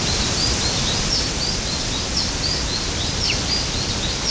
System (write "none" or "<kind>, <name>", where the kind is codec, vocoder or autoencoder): none